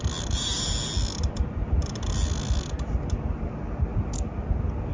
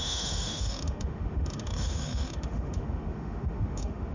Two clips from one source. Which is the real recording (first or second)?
first